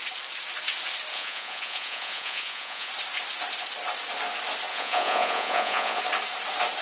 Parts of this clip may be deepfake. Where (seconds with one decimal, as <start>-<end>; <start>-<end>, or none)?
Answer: 1.1-2.9; 4.7-6.0